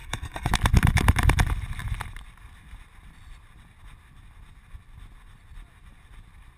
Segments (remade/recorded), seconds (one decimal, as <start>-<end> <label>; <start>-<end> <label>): 0.0-0.5 remade; 0.5-6.6 recorded